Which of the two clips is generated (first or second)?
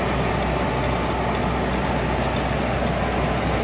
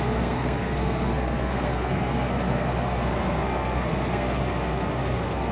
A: second